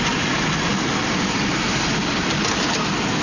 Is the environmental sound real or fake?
real